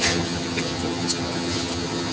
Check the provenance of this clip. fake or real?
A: fake